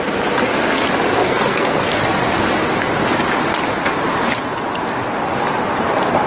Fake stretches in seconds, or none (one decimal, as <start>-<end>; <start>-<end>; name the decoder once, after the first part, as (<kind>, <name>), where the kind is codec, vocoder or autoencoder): 1.2-1.8 (codec, SNAC)